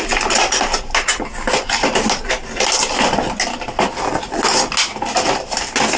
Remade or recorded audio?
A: recorded